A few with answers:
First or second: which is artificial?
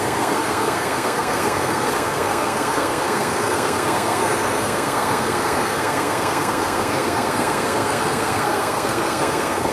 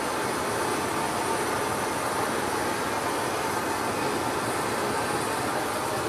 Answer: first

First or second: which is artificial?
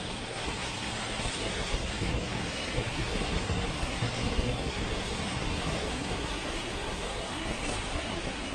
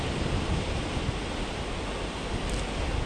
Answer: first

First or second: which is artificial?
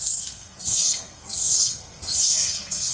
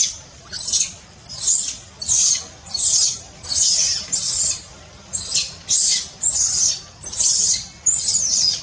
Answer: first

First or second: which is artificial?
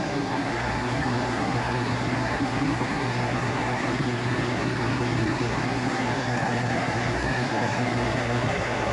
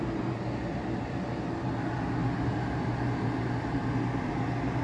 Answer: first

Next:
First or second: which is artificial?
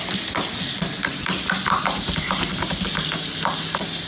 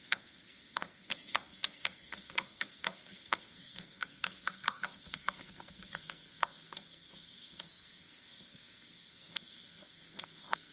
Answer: second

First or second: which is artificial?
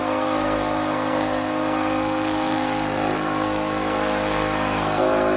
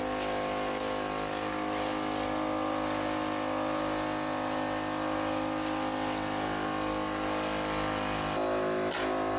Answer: first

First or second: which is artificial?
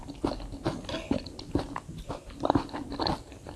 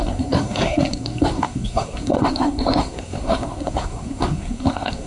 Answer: second